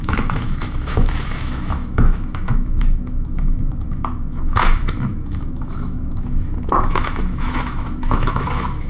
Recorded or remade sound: remade